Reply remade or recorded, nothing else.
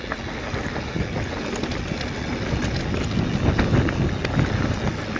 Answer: recorded